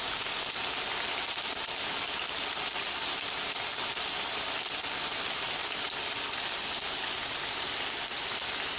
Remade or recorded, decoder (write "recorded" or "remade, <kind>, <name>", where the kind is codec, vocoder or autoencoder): recorded